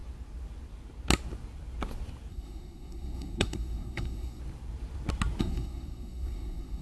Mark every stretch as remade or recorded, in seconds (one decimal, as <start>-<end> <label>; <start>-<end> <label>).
0.0-2.3 recorded; 2.3-4.4 remade; 4.4-5.4 recorded; 5.4-6.8 remade